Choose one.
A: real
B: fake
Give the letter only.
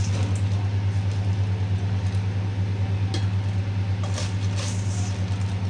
A